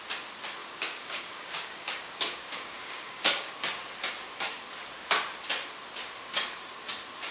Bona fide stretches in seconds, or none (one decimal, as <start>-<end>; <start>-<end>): 0.0-0.6; 3.5-7.3

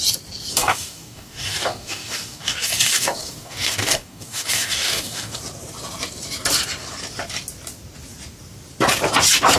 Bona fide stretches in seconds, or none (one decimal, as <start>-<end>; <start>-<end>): 0.0-0.5; 5.4-9.6

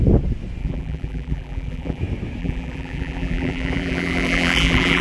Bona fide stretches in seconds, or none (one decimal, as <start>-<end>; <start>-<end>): 0.0-0.6; 2.0-2.4